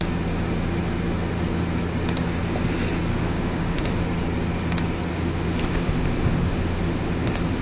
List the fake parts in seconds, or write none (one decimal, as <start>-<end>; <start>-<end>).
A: 3.1-4.0; 5.1-7.6